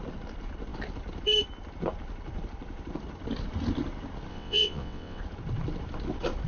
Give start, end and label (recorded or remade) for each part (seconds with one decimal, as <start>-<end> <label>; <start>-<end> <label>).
0.0-4.3 recorded; 4.3-5.2 remade; 5.2-6.5 recorded